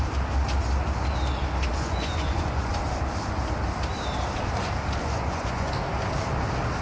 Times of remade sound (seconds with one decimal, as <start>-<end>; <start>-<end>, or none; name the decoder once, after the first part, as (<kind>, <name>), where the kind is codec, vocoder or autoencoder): 1.7-2.7 (vocoder, Vocos); 5.0-5.7